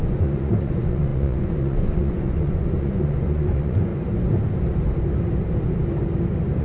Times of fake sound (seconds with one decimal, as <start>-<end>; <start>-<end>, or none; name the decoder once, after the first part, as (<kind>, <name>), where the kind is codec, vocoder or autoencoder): 0.0-3.9 (vocoder, Vocos)